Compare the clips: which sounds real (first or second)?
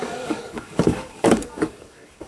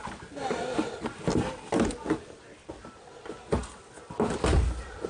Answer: second